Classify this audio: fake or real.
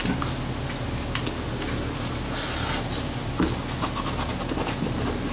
real